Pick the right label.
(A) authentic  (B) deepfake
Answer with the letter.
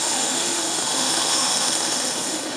B